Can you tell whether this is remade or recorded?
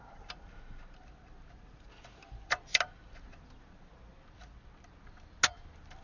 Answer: recorded